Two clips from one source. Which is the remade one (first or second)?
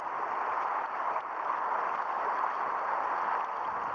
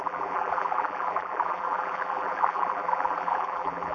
second